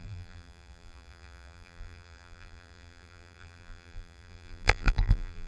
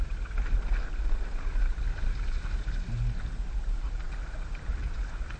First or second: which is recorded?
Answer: second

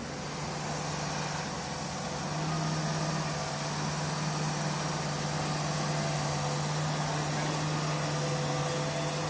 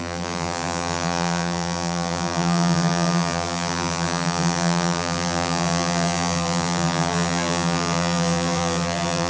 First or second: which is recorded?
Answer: first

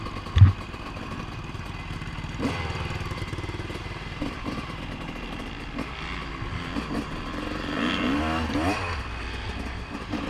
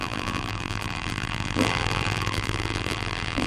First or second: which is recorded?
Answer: first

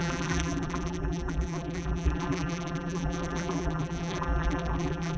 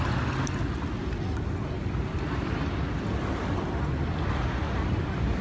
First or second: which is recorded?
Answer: second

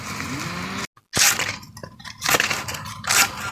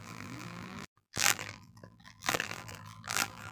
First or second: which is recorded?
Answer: first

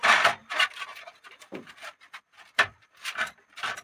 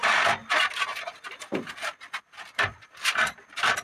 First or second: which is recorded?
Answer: second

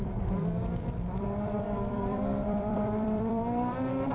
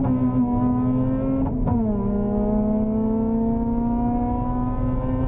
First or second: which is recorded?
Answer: second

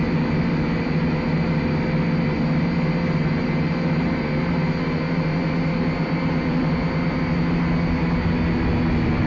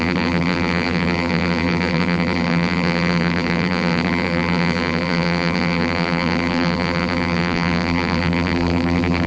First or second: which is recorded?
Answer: first